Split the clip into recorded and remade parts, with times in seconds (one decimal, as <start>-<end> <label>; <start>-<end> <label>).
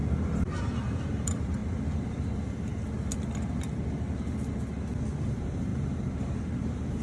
0.0-1.6 remade; 1.6-2.2 recorded; 2.2-2.7 remade; 2.7-5.1 recorded; 5.1-7.0 remade